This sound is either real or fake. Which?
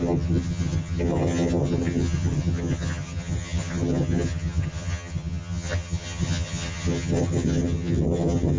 fake